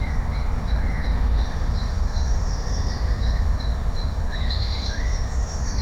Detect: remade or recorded remade